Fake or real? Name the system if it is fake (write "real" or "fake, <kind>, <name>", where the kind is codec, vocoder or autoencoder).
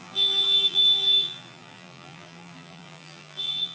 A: fake, vocoder, BigVGAN v2